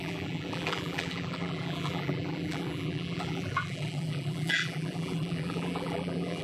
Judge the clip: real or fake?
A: fake